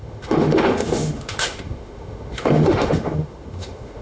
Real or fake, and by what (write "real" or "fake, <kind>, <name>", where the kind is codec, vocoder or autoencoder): fake, autoencoder, DAC-VAE